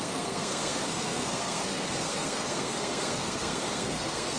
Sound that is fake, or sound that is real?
fake